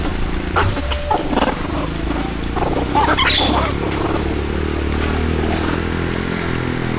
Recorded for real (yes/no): yes